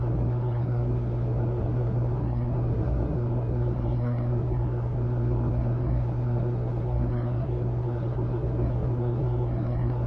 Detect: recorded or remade remade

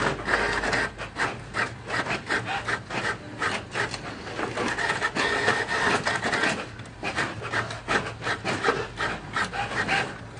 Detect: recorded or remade recorded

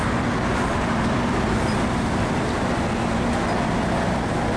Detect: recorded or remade recorded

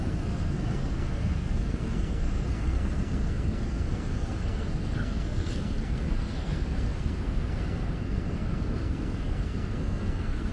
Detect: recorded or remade remade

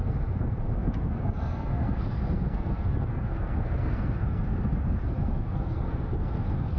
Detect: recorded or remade remade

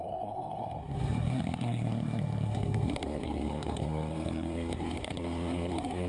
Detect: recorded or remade remade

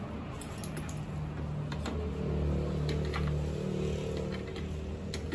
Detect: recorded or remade recorded